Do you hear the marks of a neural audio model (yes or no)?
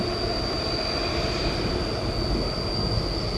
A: no